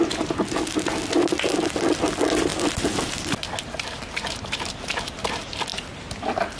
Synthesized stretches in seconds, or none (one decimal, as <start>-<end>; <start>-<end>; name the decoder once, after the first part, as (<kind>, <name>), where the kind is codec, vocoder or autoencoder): none